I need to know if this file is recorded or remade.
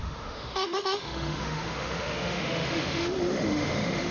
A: remade